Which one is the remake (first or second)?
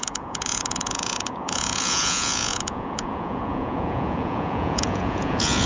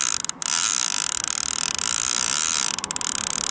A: first